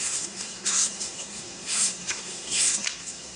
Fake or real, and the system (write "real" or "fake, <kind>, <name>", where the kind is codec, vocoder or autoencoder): fake, codec, SNAC